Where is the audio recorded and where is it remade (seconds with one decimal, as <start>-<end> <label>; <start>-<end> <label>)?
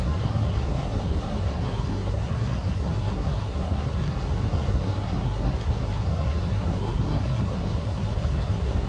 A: 0.0-8.9 remade